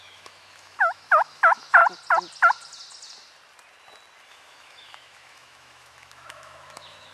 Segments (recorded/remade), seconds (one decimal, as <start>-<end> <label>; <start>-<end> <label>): 0.0-1.8 remade; 1.8-4.3 recorded; 4.3-7.1 remade